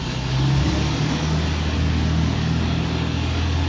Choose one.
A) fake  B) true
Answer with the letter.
A